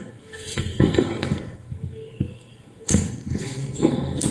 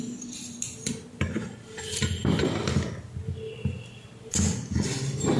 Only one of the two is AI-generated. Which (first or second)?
first